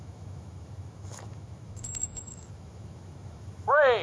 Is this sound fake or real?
fake